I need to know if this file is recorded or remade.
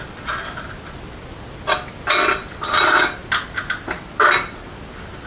recorded